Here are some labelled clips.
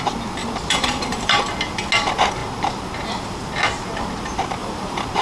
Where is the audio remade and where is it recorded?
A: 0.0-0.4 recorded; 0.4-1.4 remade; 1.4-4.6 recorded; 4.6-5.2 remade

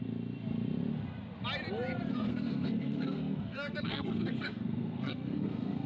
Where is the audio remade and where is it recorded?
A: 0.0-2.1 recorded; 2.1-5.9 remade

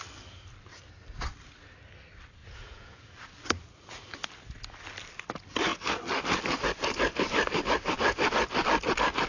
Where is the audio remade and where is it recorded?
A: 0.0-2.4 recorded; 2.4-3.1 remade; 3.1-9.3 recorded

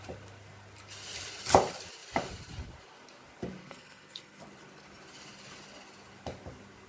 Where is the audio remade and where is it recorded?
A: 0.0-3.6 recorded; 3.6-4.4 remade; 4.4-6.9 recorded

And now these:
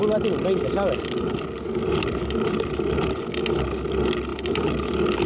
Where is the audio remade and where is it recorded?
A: 0.0-5.3 recorded